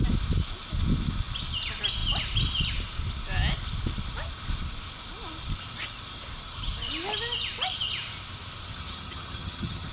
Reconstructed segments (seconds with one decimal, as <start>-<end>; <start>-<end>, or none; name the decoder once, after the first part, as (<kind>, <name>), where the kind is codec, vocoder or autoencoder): 8.7-9.9 (vocoder, HiFi-GAN)